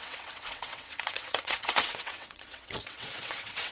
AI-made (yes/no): yes